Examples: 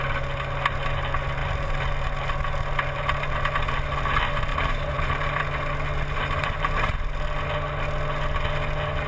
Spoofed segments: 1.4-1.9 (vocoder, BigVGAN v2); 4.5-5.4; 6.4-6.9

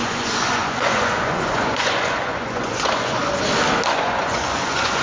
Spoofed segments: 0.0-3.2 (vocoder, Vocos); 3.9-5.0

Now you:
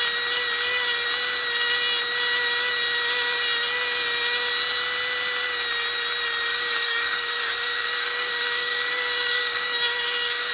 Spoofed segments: 6.5-10.5 (codec, DAC)

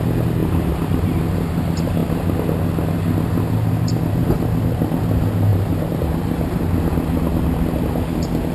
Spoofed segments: 0.4-1.2 (vocoder, BigVGAN v2); 5.5-6.5

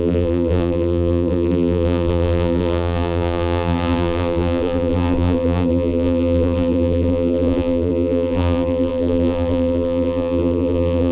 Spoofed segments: 0.0-11.1 (vocoder, BigVGAN v2)

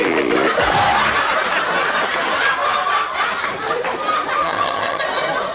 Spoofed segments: 4.4-5.0 (vocoder, HiFi-GAN)

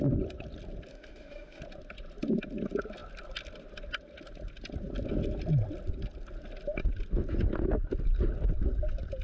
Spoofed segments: 0.9-1.6 (autoencoder, DAC-VAE)